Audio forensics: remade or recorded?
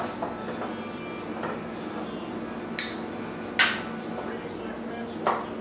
recorded